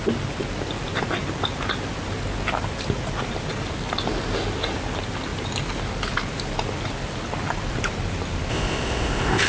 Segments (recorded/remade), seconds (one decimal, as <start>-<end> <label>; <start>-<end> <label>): 0.0-8.5 recorded; 8.5-9.5 remade